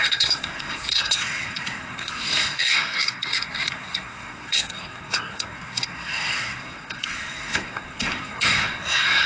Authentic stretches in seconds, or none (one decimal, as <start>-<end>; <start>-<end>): none